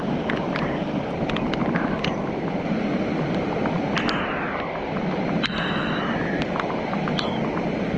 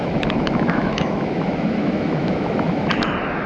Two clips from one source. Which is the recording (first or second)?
first